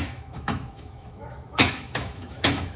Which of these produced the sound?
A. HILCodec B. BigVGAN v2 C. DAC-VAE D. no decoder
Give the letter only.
C